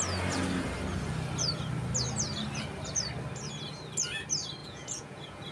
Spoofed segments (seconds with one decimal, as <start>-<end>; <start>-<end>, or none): 4.6-5.5